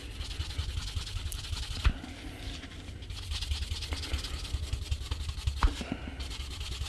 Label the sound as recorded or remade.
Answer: recorded